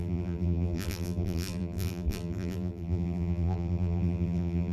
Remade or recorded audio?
remade